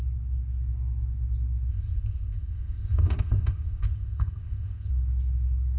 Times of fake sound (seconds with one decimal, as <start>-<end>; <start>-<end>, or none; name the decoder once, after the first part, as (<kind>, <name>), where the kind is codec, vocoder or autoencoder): 1.7-4.9 (codec, ZipCodec)